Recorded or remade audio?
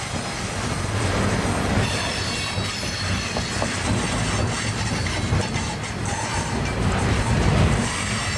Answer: recorded